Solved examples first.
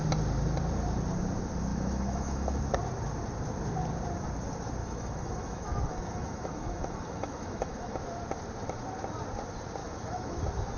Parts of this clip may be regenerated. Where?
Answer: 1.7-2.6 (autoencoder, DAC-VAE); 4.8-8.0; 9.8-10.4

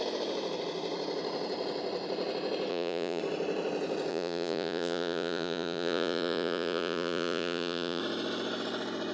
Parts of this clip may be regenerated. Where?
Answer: 2.7-3.2 (vocoder, Vocos); 4.1-8.0

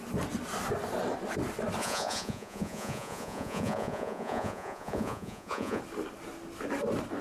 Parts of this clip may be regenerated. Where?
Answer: 1.8-5.8 (vocoder, Vocos)

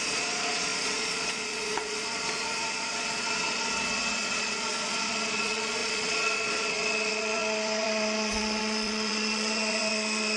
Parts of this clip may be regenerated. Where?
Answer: 0.0-10.4 (vocoder, Vocos)

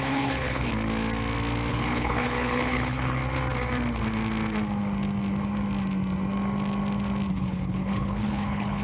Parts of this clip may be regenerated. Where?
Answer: 0.0-0.7 (codec, HILCodec); 1.7-3.2; 7.3-8.8

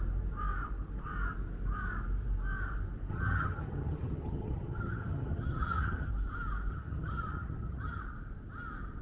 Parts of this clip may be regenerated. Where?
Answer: 3.1-6.1 (vocoder, HiFi-GAN); 6.7-8.0

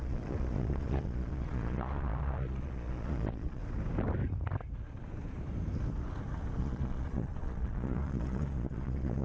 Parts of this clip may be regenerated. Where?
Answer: 0.0-3.6 (vocoder, Vocos); 6.6-9.2

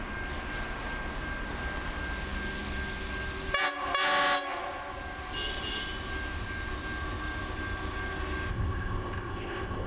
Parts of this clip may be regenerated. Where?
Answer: 8.5-9.9 (codec, ZipCodec)